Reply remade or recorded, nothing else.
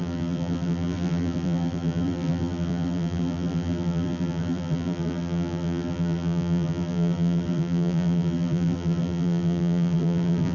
remade